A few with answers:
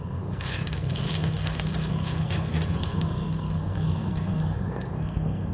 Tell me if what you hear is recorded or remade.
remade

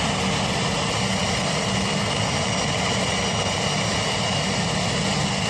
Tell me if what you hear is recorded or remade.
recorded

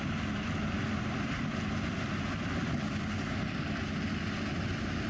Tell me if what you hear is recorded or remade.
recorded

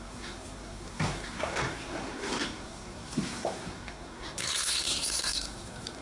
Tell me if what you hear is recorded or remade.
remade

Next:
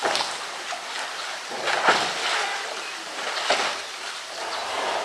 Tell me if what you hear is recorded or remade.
recorded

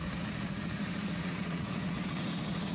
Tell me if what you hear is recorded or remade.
remade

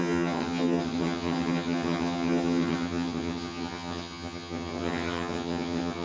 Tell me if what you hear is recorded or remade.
remade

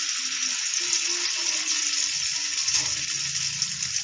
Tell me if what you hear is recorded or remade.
recorded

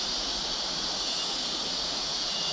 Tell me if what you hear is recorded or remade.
remade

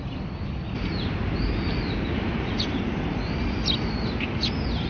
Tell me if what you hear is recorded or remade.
recorded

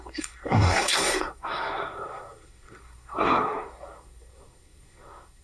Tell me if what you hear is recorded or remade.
remade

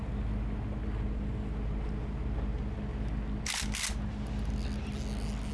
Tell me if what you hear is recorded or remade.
recorded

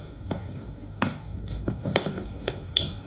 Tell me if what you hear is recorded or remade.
remade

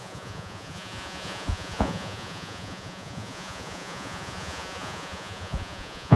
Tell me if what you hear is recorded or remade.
remade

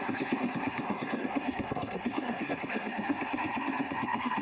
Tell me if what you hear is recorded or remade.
remade